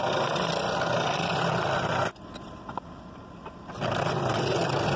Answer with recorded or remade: recorded